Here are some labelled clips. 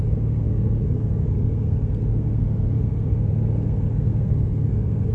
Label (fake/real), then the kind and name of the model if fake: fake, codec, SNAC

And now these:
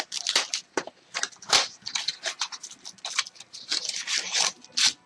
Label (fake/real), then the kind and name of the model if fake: real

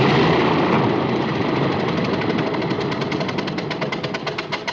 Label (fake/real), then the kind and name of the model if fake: real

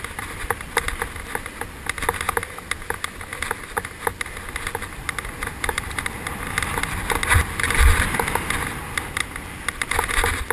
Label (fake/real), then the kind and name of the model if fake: real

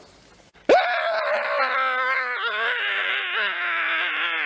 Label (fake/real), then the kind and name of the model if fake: real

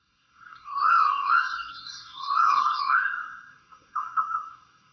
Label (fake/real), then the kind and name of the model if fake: fake, codec, SNAC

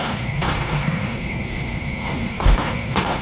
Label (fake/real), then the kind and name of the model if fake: fake, codec, SNAC